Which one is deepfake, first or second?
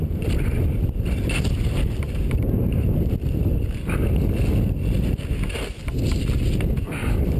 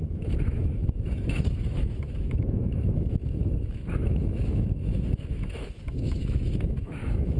second